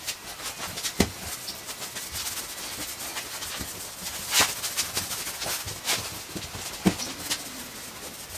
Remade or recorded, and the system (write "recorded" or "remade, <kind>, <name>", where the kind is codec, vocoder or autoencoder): recorded